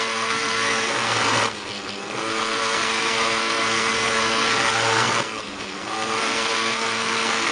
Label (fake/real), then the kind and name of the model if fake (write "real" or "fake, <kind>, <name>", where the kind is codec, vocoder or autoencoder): fake, codec, SNAC